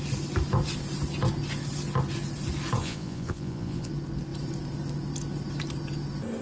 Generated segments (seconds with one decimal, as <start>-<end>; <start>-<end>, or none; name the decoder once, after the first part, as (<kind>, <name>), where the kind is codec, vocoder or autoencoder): 2.8-3.9 (vocoder, Vocos)